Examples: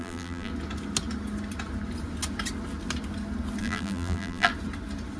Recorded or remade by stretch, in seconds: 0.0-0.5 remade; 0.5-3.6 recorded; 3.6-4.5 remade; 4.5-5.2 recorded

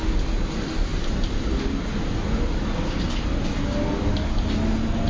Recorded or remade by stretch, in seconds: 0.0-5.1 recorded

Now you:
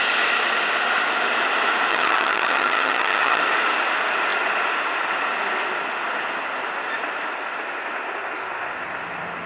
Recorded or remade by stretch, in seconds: 0.0-1.9 recorded; 1.9-3.4 remade; 3.4-9.5 recorded